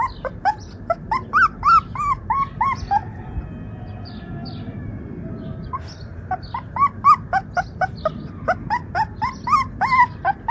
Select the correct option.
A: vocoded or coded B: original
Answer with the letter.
B